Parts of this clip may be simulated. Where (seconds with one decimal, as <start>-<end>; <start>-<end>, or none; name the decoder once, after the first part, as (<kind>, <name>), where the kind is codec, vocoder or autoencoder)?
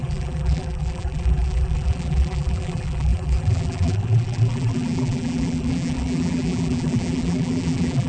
0.0-8.1 (vocoder, BigVGAN v2)